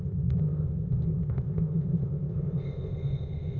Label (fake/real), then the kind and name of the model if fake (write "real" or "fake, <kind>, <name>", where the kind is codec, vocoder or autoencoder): fake, codec, ZipCodec